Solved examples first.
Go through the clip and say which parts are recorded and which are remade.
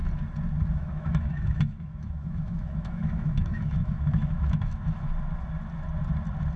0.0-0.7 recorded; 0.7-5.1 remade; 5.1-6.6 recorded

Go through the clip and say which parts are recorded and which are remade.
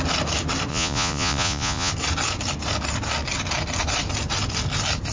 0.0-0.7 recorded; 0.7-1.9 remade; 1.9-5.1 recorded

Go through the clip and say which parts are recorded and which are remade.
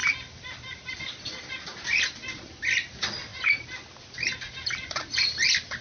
0.0-3.3 remade; 3.3-4.5 recorded; 4.5-5.8 remade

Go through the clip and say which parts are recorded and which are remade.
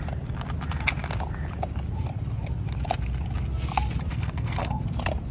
0.0-4.1 recorded; 4.1-4.8 remade; 4.8-5.3 recorded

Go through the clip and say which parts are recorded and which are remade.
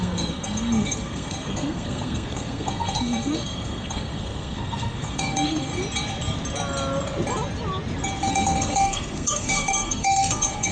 0.0-5.7 remade; 5.7-8.3 recorded; 8.3-10.7 remade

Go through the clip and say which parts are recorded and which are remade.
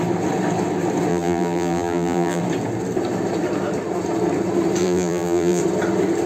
0.0-1.1 recorded; 1.1-2.4 remade; 2.4-4.8 recorded; 4.8-5.6 remade; 5.6-6.3 recorded